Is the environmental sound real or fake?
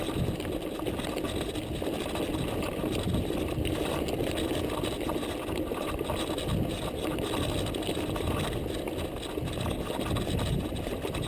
real